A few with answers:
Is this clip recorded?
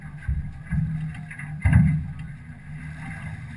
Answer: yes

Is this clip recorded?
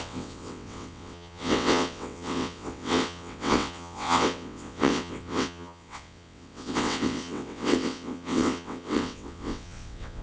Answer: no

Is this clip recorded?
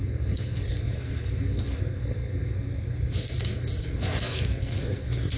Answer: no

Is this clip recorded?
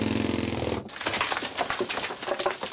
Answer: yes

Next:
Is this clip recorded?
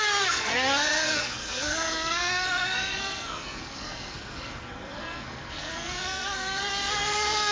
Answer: no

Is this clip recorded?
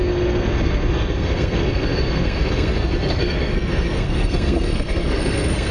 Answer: no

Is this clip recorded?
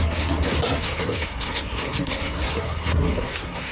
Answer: no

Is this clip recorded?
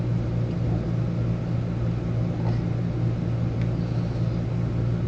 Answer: yes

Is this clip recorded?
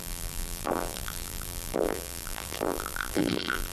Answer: no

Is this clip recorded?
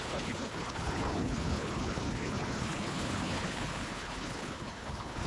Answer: no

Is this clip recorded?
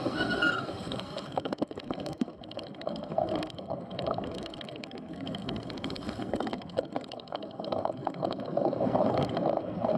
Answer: no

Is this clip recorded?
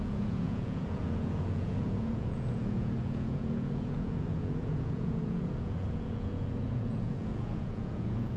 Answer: no